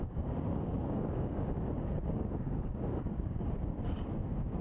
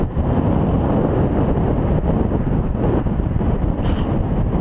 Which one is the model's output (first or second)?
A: first